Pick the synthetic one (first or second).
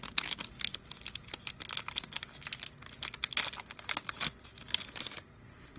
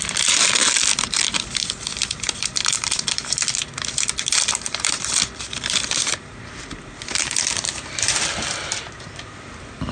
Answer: second